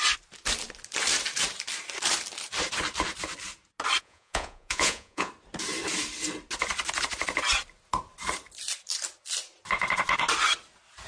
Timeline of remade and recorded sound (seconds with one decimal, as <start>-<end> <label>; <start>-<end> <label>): 0.0-4.0 recorded; 4.0-5.3 remade; 5.3-11.1 recorded